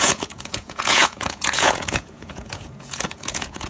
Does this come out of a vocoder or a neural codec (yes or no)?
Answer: yes